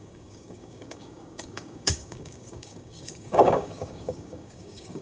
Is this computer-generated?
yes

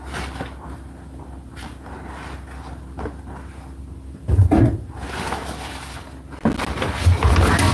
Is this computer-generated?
no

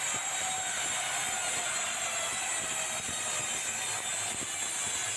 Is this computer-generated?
no